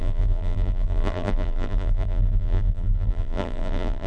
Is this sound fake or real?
fake